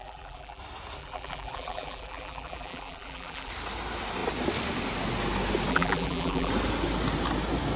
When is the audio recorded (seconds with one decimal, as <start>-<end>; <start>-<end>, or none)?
0.6-1.0; 3.5-5.7; 6.5-7.8